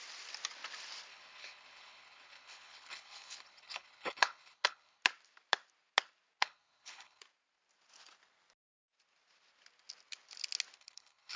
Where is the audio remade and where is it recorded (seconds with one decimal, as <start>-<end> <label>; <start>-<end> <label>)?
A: 0.0-1.1 recorded; 1.1-5.0 remade; 5.0-6.4 recorded; 6.4-7.2 remade; 7.2-10.8 recorded; 10.8-11.4 remade